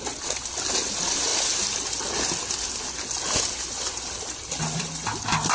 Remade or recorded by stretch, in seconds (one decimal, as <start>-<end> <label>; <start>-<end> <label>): 0.0-5.5 recorded